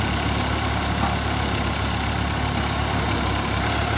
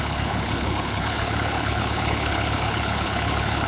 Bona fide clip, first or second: first